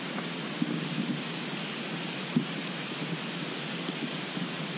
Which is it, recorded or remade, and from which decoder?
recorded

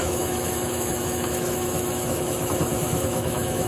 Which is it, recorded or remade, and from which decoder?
remade, autoencoder, DAC-VAE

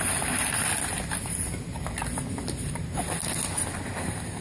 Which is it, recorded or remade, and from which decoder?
recorded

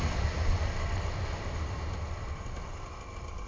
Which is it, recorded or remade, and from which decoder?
recorded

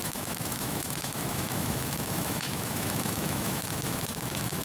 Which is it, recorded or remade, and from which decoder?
remade, autoencoder, DAC-VAE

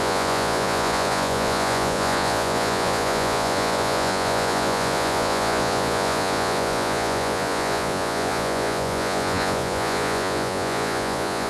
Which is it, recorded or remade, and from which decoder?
remade, vocoder, Vocos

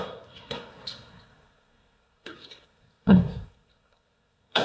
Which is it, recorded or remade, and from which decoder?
remade, codec, SNAC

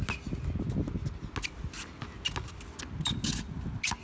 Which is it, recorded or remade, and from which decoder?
recorded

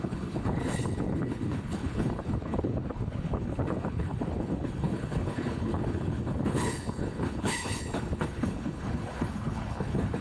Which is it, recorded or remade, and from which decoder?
remade, codec, HILCodec